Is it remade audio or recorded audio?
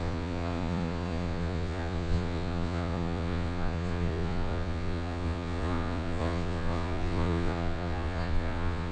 remade